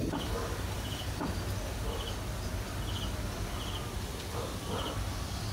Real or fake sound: real